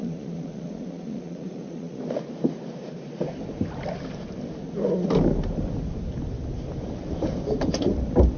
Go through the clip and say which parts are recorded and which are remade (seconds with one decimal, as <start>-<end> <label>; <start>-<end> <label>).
0.0-2.0 remade; 2.0-8.4 recorded